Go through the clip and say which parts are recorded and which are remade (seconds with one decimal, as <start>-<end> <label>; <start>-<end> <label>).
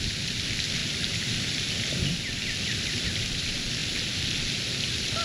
0.0-3.8 remade; 3.8-4.7 recorded; 4.7-5.2 remade